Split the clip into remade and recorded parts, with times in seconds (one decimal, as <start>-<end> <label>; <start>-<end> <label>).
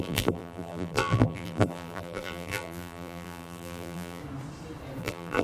0.0-4.2 remade; 4.2-5.0 recorded; 5.0-5.4 remade